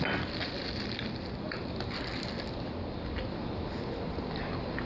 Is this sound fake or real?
real